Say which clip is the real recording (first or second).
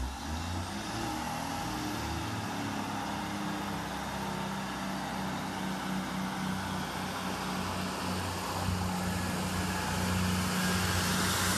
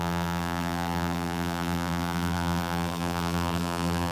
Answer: first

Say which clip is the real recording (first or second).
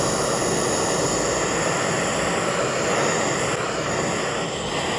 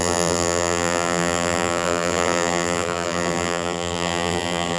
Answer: first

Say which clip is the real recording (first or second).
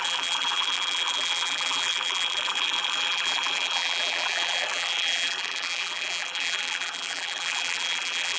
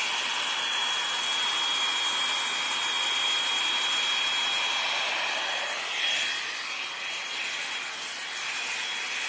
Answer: second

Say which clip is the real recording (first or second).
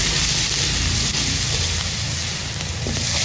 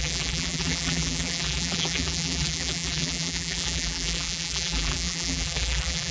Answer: first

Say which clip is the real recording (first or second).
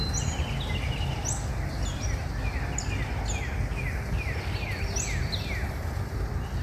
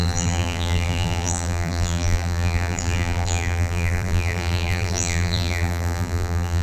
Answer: first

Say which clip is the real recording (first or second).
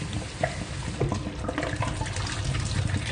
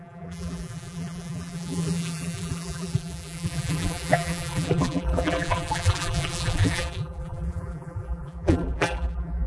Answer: first